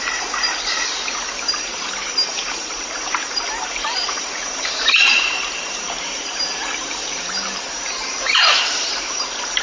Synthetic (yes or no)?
yes